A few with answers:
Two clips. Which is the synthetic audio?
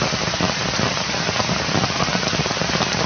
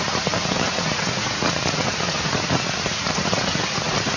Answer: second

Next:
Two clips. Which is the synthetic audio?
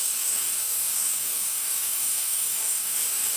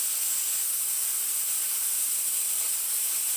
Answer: first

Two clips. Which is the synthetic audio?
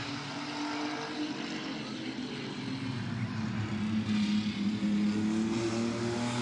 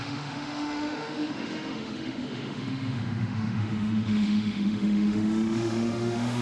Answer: second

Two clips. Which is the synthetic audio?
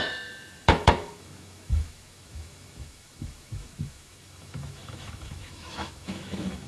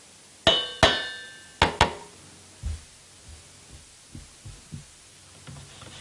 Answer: first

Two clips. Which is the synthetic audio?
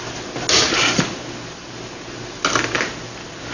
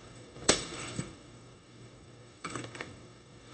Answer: second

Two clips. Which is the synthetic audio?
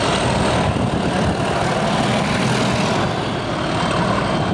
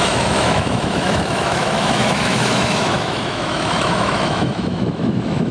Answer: second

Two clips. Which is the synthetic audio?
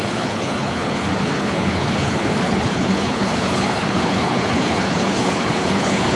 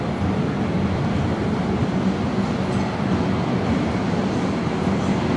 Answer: first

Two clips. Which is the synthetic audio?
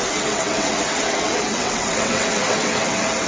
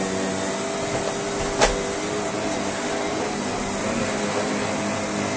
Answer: first